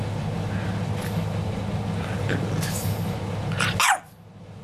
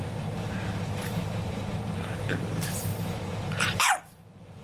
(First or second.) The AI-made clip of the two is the second